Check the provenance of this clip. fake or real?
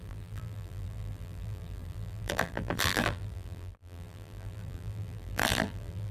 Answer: fake